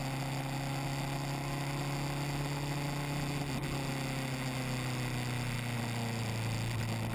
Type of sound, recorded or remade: recorded